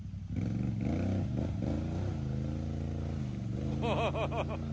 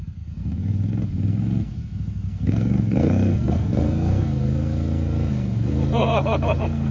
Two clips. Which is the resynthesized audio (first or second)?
second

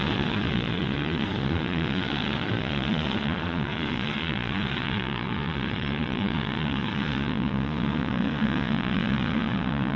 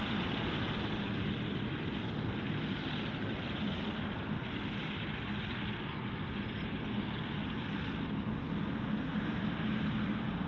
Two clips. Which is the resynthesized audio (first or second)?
first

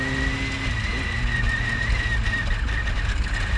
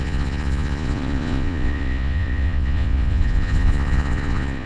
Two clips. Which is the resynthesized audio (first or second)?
second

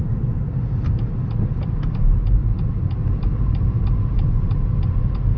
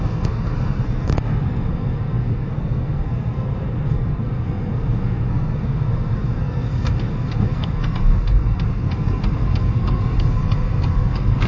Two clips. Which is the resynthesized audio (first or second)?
second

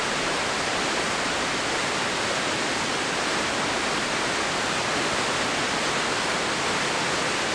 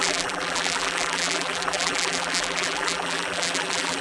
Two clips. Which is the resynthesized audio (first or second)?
second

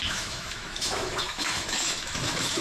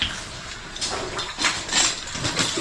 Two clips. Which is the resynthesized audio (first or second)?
first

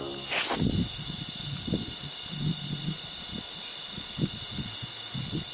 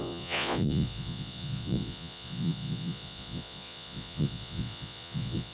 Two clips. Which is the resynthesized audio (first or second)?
second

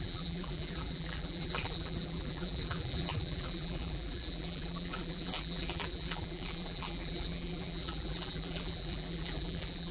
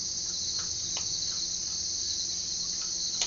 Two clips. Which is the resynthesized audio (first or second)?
first